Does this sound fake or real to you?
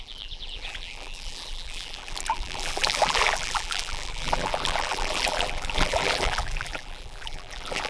fake